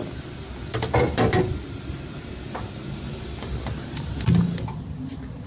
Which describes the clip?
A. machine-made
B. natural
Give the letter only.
B